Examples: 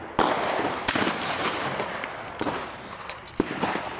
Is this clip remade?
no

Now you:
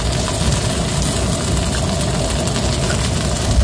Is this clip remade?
no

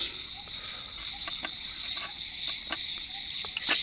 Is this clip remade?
no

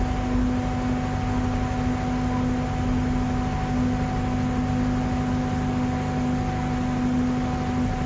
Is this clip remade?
no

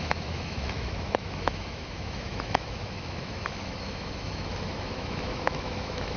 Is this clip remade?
yes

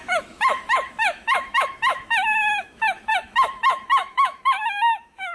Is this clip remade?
yes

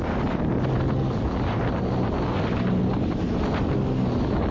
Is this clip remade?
no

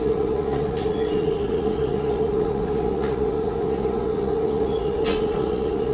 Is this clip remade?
yes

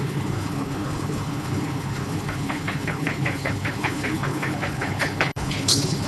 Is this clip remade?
yes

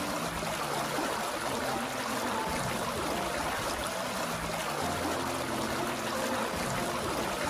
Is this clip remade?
no